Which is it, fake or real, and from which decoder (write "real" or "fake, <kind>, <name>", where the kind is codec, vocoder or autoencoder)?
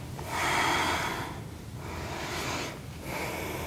real